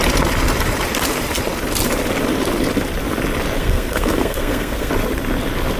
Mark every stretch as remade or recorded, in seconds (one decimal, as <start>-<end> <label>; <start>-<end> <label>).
0.0-3.6 recorded; 3.6-4.9 remade; 4.9-5.8 recorded